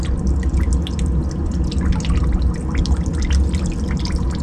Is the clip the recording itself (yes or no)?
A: yes